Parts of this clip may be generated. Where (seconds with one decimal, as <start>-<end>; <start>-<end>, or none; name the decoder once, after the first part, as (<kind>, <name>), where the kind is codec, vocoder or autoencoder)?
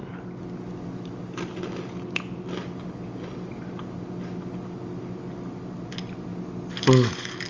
none